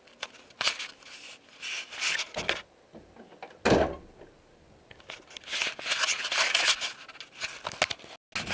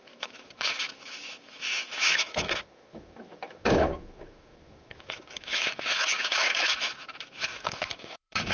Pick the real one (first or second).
first